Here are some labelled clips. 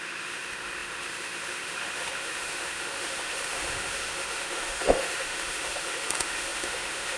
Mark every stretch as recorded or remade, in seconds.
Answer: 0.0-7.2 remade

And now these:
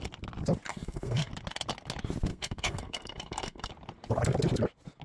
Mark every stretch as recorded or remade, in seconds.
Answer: 0.0-0.7 recorded; 0.7-1.3 remade; 1.3-2.3 recorded; 2.3-3.7 remade; 3.7-5.0 recorded